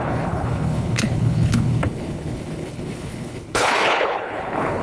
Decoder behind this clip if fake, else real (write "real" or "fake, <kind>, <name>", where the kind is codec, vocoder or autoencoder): fake, codec, HILCodec